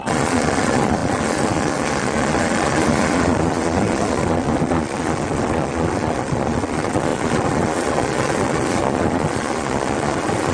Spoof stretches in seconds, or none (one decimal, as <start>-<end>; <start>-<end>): 0.0-10.5

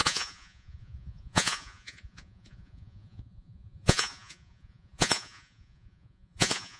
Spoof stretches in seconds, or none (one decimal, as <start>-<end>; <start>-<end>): 0.0-6.8

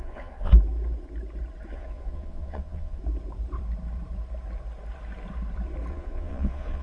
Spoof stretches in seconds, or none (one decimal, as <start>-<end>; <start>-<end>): 0.0-0.5; 1.7-3.0; 5.9-6.8

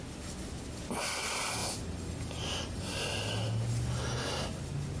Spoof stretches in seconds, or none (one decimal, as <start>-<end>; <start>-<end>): none

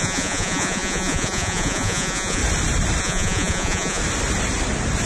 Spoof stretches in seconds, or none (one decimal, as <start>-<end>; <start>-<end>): 0.0-2.4; 3.0-4.0

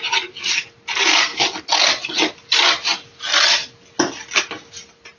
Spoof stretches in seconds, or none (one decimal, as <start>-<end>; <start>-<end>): none